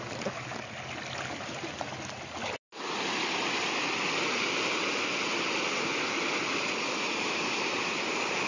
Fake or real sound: real